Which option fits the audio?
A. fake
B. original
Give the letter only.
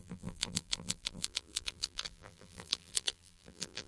A